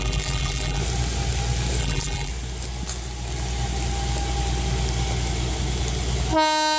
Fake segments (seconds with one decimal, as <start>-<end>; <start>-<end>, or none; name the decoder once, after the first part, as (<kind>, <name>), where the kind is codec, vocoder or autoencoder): 0.0-0.8 (vocoder, BigVGAN v2); 1.8-2.3